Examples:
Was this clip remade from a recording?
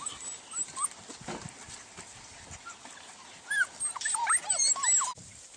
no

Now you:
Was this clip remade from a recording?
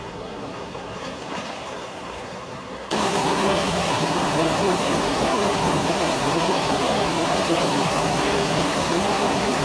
yes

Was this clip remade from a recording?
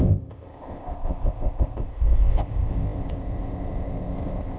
yes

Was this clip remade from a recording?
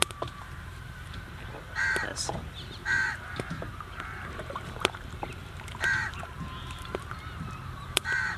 yes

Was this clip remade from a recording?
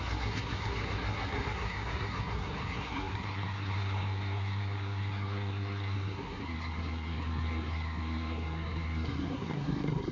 yes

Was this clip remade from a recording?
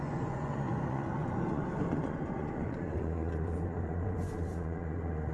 yes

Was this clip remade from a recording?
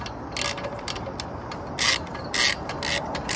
no